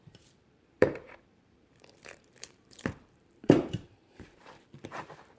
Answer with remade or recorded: remade